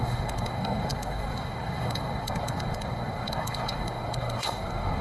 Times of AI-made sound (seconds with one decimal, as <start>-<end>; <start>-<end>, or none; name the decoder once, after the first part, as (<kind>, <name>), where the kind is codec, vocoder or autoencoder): 0.0-5.0 (codec, SNAC)